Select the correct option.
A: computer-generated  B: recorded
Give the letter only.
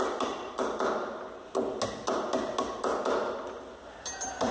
B